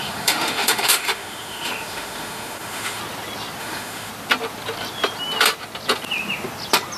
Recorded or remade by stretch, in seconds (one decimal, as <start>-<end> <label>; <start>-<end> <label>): 0.0-3.0 remade; 3.0-3.6 recorded; 3.6-4.1 remade; 4.1-7.0 recorded